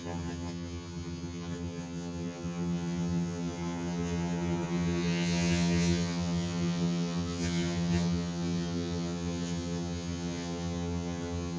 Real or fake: fake